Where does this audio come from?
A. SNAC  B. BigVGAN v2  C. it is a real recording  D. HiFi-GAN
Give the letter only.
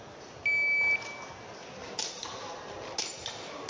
C